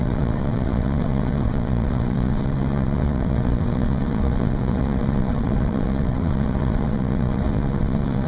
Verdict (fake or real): fake